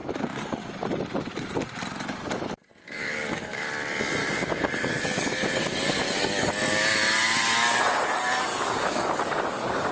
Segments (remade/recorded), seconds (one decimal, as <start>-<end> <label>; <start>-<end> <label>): 0.0-2.8 recorded; 2.8-3.7 remade; 3.7-4.2 recorded; 4.2-6.5 remade; 6.5-8.5 recorded; 8.5-9.9 remade